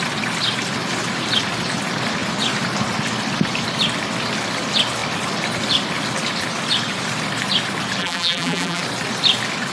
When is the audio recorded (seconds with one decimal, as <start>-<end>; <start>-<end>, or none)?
0.0-8.0; 8.8-9.7